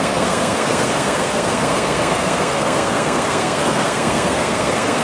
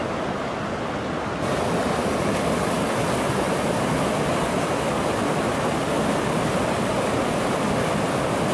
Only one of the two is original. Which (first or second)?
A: second